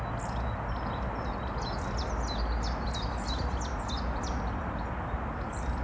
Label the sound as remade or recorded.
recorded